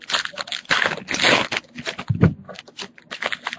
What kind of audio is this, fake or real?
real